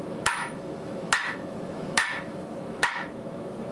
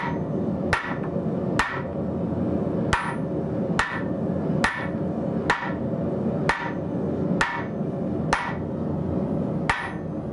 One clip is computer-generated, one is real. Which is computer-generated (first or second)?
first